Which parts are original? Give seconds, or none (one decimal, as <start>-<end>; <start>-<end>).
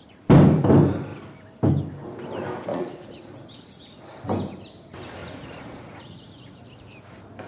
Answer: 0.0-2.7; 4.0-5.2; 6.6-7.5